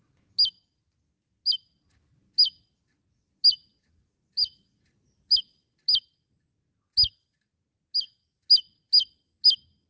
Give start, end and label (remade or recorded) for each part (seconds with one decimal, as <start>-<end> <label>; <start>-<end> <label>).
0.0-9.9 recorded